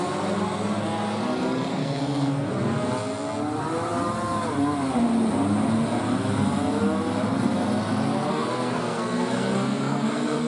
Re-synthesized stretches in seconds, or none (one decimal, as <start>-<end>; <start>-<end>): 1.7-2.5; 8.3-10.5